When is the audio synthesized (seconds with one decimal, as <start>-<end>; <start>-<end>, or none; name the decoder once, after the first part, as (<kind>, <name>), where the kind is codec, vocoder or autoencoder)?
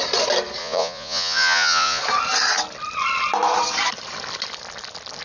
0.6-2.0 (vocoder, Vocos)